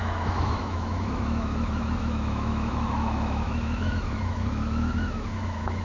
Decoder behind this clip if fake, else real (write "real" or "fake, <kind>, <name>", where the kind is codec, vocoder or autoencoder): fake, autoencoder, DAC-VAE